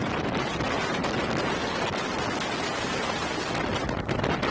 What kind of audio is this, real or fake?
real